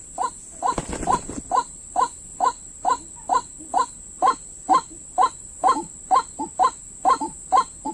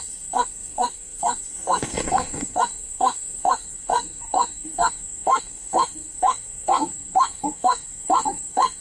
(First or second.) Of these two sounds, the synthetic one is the second